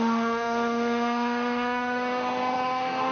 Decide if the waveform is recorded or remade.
remade